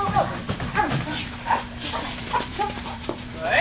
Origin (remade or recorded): remade